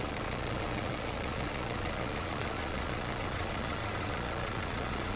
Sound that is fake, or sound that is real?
fake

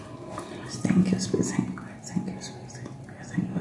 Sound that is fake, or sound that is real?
real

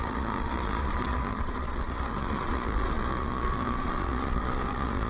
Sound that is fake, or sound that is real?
fake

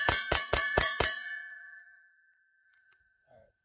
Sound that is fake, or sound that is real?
fake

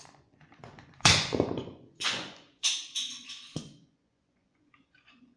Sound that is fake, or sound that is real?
fake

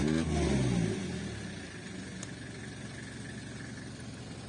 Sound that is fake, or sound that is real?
real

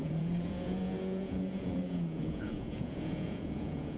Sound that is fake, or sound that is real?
fake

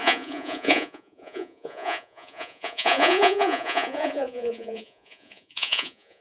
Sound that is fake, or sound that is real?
fake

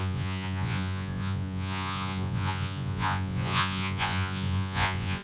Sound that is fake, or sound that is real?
fake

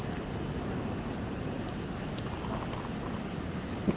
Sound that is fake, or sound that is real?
real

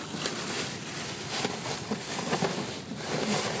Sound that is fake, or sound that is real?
real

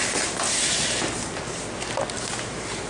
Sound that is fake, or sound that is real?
real